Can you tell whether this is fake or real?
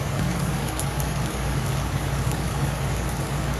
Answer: fake